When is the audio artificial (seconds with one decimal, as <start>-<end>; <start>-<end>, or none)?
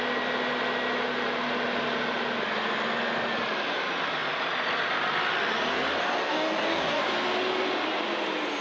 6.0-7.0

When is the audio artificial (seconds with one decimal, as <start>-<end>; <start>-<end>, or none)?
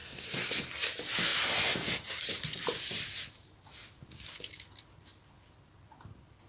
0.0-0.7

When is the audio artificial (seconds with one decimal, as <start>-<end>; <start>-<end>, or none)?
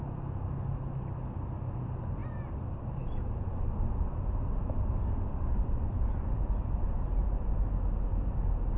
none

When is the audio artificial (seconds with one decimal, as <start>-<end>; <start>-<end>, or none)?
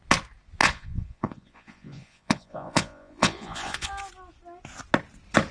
0.6-3.9